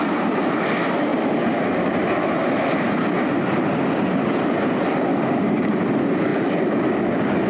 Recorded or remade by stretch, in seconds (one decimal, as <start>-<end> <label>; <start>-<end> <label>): 0.0-5.1 recorded; 5.1-5.8 remade; 5.8-7.5 recorded